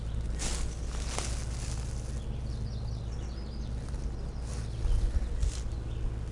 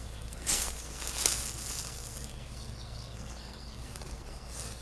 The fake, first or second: second